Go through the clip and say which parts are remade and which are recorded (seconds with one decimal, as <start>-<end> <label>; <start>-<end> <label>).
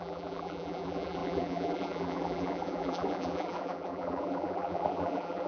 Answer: 0.0-5.5 remade